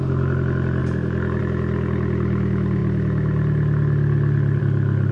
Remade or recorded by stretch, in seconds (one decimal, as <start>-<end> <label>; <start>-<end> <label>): 0.0-5.1 recorded